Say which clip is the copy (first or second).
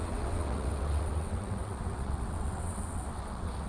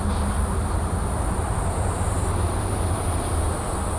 first